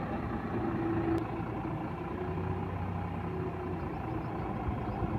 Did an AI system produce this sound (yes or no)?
no